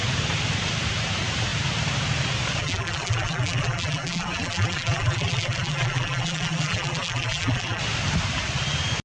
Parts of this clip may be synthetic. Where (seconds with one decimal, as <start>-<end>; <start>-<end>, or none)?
2.6-7.8